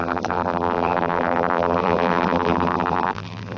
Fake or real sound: fake